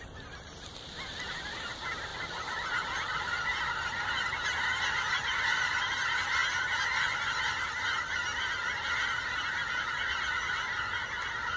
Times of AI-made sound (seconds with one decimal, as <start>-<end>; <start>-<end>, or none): none